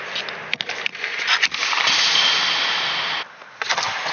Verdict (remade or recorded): recorded